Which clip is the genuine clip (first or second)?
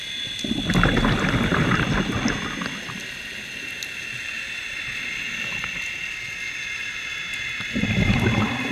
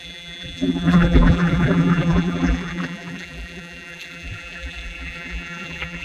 first